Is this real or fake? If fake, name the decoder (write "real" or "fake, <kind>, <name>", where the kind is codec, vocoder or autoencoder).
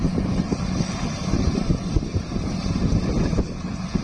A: real